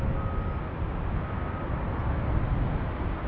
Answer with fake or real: real